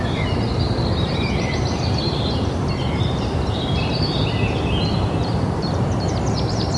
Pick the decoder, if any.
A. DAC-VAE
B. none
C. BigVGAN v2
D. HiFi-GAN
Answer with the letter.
C